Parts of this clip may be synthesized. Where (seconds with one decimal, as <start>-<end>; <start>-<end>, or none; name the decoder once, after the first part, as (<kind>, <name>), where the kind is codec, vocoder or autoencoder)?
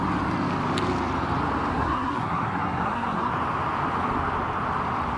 1.7-3.3 (codec, SNAC)